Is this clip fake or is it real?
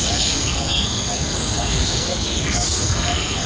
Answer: fake